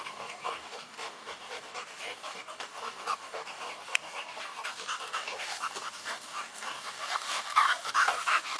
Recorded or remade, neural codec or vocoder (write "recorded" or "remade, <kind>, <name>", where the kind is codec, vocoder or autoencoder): remade, codec, DAC